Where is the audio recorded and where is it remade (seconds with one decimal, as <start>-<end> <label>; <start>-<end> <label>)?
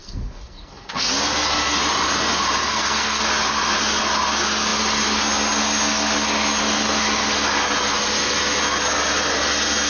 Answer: 0.0-1.1 remade; 1.1-2.6 recorded; 2.6-3.2 remade; 3.2-9.9 recorded